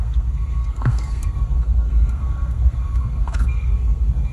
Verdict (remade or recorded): remade